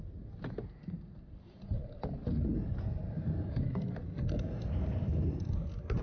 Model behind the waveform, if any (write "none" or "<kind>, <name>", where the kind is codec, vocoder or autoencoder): none